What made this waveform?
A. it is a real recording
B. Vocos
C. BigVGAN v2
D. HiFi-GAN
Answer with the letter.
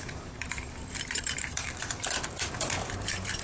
C